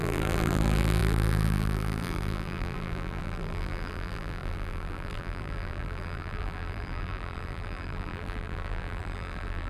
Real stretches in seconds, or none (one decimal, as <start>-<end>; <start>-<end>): none